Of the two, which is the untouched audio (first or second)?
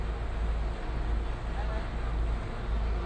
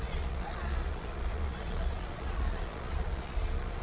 first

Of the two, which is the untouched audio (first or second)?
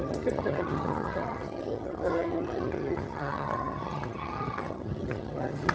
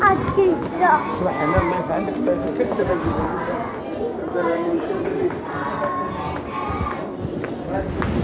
second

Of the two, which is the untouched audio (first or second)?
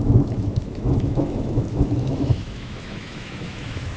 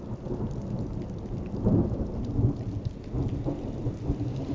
second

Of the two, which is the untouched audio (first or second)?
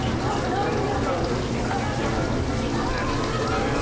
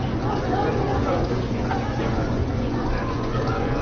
first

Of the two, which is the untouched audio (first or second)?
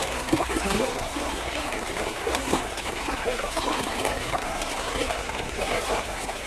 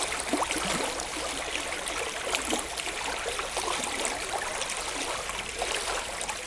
second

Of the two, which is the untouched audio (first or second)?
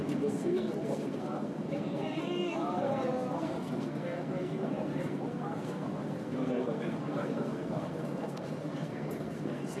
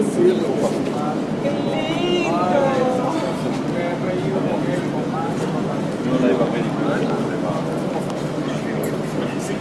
second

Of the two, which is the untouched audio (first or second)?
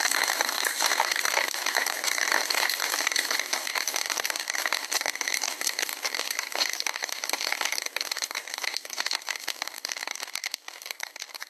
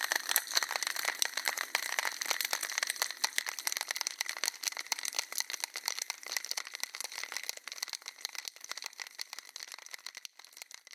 second